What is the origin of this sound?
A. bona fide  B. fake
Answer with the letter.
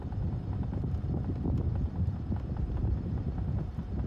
B